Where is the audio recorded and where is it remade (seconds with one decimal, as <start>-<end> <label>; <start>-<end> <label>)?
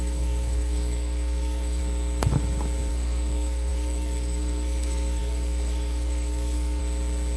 0.0-1.8 remade; 1.8-2.9 recorded; 2.9-6.8 remade; 6.8-7.4 recorded